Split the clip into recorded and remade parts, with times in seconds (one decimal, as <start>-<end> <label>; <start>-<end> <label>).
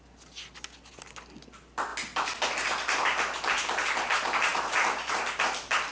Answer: 0.0-5.9 recorded